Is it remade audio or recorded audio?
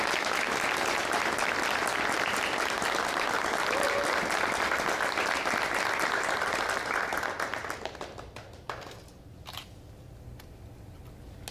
recorded